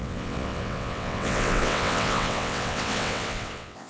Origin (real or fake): fake